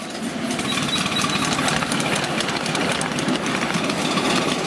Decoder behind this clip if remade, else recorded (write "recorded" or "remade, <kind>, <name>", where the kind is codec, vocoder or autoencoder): recorded